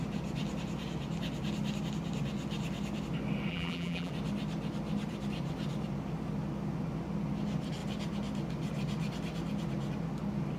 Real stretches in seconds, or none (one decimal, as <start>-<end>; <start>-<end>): 0.0-3.5; 4.1-10.6